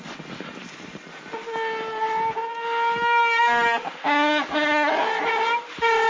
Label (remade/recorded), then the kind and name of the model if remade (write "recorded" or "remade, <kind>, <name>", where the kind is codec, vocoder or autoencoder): recorded